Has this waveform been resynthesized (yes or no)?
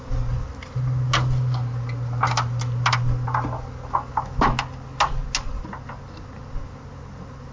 no